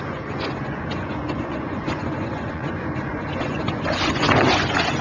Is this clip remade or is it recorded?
remade